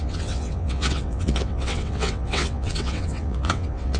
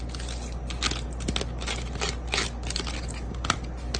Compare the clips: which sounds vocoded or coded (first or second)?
first